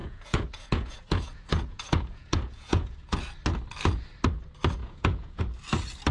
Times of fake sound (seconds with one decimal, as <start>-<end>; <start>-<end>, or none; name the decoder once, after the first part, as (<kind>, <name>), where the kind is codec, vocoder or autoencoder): 0.0-3.2 (vocoder, Vocos); 4.8-5.4